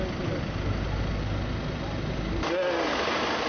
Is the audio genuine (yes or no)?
yes